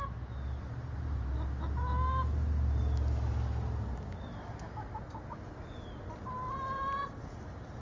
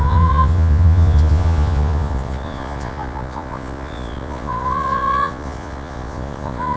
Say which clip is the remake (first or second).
second